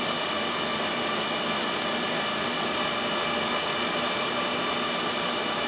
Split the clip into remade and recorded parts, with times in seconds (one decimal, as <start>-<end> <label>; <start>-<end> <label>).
0.0-5.7 recorded